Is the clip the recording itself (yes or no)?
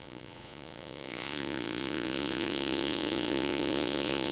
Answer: no